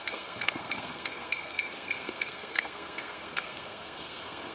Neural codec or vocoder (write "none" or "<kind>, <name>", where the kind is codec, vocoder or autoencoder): codec, SNAC